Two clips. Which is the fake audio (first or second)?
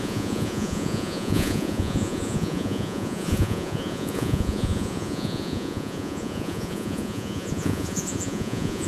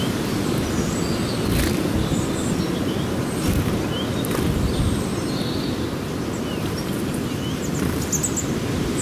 first